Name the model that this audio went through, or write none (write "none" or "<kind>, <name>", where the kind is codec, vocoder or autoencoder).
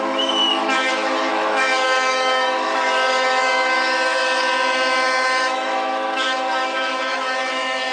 autoencoder, DAC-VAE